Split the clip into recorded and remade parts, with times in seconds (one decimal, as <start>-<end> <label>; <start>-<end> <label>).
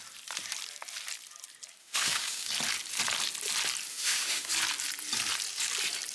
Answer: 0.0-1.8 recorded; 1.8-2.5 remade; 2.5-3.9 recorded; 3.9-4.5 remade; 4.5-6.1 recorded